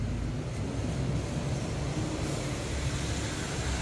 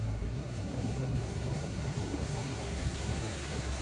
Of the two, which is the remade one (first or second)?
second